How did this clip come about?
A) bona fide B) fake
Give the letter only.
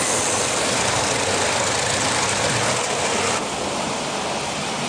A